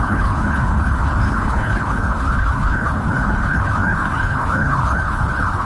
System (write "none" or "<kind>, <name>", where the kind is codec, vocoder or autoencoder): codec, HILCodec